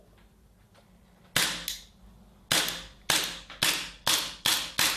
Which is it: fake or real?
real